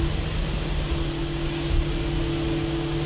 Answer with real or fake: real